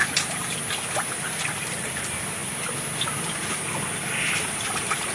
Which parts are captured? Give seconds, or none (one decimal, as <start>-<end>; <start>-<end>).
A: 0.0-1.2; 2.4-4.2